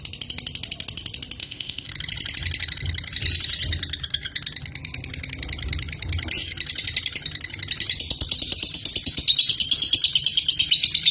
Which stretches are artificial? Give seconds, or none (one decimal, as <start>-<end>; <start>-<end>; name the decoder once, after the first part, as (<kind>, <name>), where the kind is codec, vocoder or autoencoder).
1.4-1.9 (codec, ZipCodec)